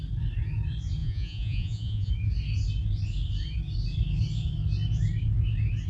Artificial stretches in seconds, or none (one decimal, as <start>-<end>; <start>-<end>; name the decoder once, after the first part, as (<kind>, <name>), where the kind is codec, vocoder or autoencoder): 1.0-2.1 (vocoder, Vocos)